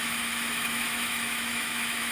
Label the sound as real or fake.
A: fake